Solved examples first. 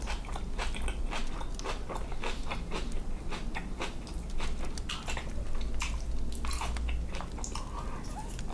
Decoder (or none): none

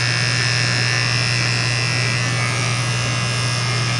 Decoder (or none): none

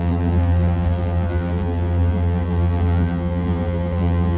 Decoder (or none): vocoder, BigVGAN v2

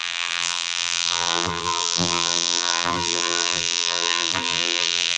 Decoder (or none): vocoder, BigVGAN v2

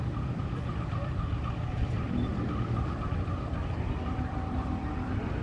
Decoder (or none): vocoder, BigVGAN v2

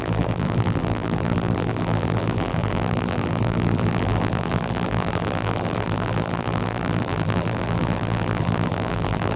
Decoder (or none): vocoder, BigVGAN v2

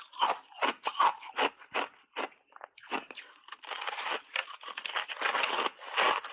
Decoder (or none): none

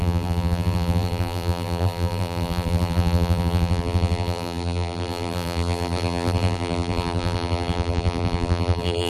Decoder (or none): vocoder, BigVGAN v2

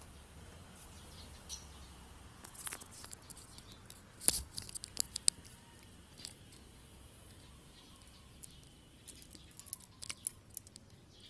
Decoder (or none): none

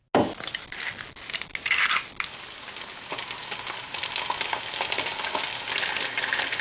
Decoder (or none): none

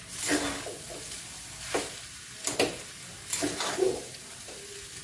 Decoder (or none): none